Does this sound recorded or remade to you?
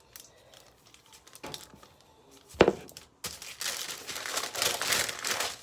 recorded